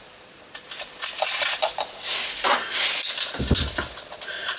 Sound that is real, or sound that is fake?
real